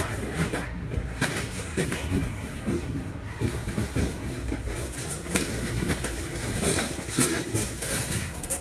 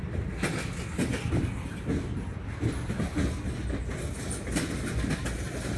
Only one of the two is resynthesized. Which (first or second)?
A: first